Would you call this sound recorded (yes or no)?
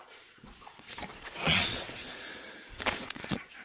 no